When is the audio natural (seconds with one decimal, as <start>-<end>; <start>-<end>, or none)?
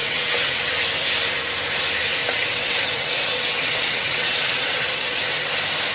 0.7-2.2; 5.5-5.9